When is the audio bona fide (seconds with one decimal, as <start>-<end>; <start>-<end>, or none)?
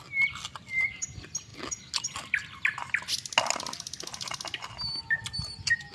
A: 0.0-5.9